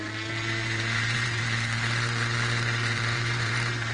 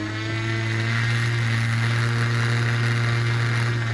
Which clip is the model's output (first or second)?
first